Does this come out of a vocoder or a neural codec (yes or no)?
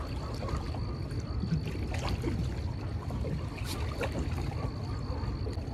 no